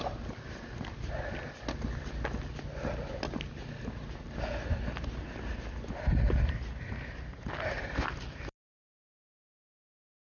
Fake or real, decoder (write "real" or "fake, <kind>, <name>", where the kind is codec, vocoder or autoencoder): real